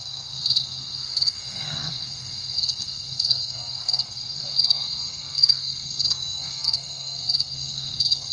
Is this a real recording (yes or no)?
no